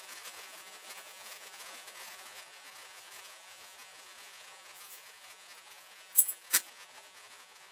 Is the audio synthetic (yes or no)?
yes